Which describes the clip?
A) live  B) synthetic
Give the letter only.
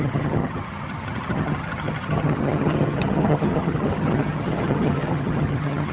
B